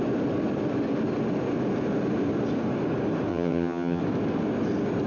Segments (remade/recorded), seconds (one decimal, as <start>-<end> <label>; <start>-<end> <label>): 0.0-3.3 recorded; 3.3-4.0 remade; 4.0-5.1 recorded